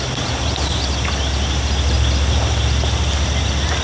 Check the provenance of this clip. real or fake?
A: real